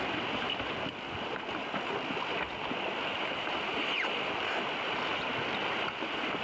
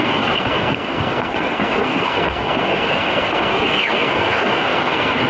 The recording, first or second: first